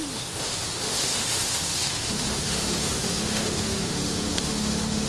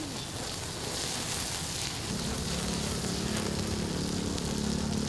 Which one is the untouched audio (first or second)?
second